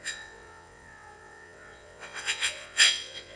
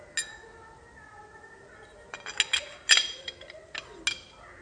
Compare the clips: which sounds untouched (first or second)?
second